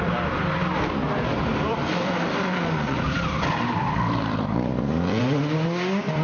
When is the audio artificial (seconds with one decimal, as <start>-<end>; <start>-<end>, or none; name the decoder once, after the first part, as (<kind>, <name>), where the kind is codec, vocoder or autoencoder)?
1.5-5.2 (vocoder, BigVGAN v2)

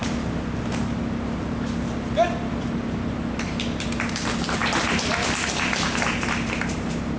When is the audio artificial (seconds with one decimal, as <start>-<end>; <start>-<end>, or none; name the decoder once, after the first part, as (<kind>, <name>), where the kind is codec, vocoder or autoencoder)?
4.6-6.5 (vocoder, BigVGAN v2)

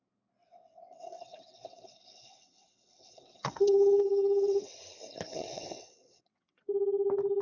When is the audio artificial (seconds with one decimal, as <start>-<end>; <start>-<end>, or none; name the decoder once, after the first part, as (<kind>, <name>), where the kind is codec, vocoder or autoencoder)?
0.4-4.8 (vocoder, WaveNeXt); 5.3-6.7

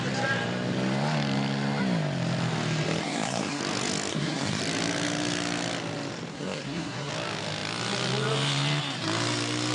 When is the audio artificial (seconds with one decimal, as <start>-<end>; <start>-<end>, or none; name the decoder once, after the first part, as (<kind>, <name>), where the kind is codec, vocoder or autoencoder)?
3.0-3.6 (codec, SNAC); 4.1-4.6; 6.3-7.1

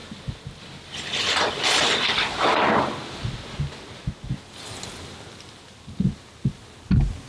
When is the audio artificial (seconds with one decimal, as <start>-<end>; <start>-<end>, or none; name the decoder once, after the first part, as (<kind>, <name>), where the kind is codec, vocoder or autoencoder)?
none